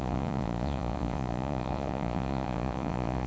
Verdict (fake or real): fake